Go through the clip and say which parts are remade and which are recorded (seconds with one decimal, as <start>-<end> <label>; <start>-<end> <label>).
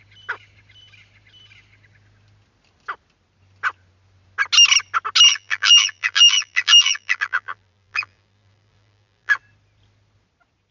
0.0-5.3 recorded; 5.3-9.4 remade; 9.4-10.7 recorded